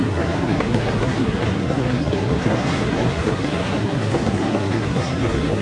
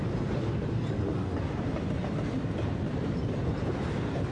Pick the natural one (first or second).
second